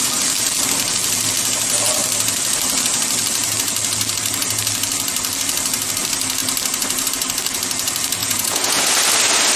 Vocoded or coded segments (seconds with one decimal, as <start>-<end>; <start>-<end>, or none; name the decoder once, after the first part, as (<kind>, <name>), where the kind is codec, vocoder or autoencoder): 8.2-8.8 (vocoder, Vocos)